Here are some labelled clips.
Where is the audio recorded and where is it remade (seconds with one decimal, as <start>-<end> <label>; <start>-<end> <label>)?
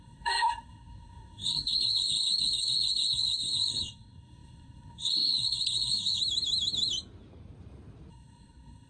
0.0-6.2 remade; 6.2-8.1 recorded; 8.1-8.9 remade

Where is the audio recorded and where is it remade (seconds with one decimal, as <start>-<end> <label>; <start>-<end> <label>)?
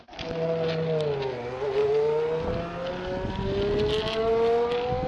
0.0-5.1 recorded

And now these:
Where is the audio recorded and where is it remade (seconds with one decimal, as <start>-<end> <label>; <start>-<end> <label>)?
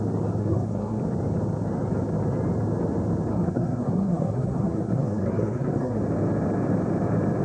0.0-0.4 recorded; 0.4-1.0 remade; 1.0-3.3 recorded; 3.3-6.0 remade; 6.0-7.4 recorded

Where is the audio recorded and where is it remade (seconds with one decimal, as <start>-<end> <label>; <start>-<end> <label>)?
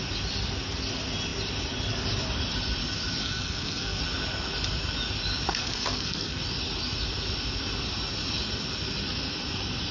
0.0-3.2 recorded; 3.2-4.0 remade; 4.0-5.5 recorded; 5.5-6.4 remade; 6.4-9.9 recorded